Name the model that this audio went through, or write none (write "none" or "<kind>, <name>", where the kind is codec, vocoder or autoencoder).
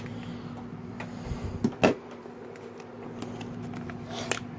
none